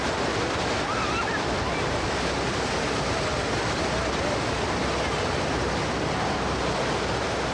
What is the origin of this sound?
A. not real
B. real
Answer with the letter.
B